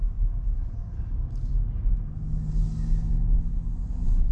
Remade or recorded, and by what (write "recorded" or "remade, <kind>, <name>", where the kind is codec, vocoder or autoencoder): recorded